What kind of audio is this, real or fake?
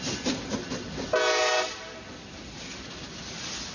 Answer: real